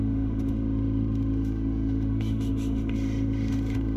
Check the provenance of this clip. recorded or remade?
remade